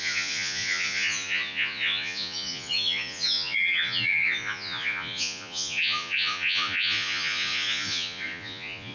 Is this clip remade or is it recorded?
remade